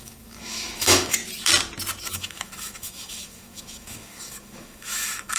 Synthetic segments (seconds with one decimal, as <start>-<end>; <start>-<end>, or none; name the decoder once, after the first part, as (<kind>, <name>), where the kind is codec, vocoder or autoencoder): 0.0-1.2 (autoencoder, DAC-VAE); 2.0-5.4